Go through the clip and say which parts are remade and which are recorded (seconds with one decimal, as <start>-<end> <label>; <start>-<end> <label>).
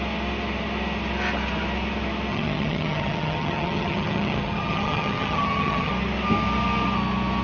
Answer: 0.0-2.3 recorded; 2.3-5.9 remade; 5.9-7.4 recorded